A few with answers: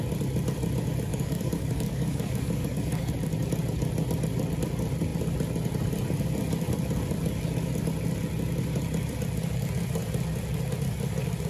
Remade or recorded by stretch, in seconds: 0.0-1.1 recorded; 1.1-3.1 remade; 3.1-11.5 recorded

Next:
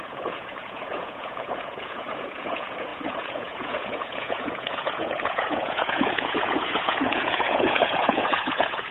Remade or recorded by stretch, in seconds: 0.0-8.9 remade

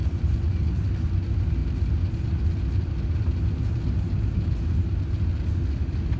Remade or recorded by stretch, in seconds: 0.0-0.8 remade; 0.8-6.2 recorded

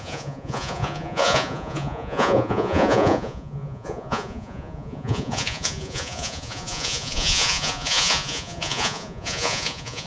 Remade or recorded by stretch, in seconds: 0.0-10.1 remade

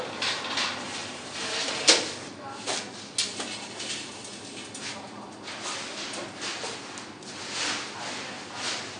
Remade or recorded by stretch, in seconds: 0.0-9.0 recorded

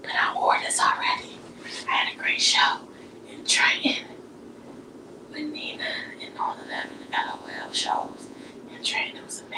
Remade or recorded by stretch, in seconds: 0.0-6.6 recorded; 6.6-8.5 remade; 8.5-9.6 recorded